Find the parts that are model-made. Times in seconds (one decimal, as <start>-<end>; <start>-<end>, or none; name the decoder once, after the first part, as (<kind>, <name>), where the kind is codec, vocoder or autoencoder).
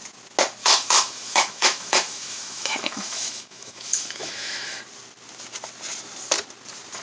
0.6-4.8 (autoencoder, DAC-VAE)